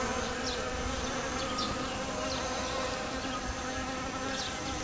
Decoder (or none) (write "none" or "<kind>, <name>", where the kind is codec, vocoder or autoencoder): none